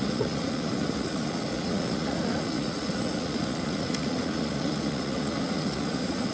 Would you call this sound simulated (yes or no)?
yes